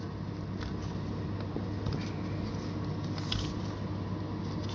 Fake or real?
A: real